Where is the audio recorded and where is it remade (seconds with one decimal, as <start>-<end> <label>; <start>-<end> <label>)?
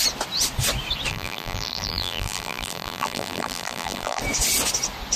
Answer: 0.0-1.1 recorded; 1.1-4.2 remade; 4.2-5.2 recorded